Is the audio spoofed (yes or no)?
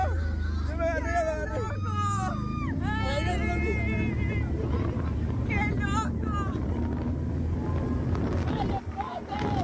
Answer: no